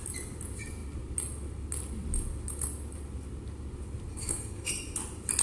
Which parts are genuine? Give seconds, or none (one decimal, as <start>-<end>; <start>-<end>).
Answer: 0.0-4.1; 4.7-5.4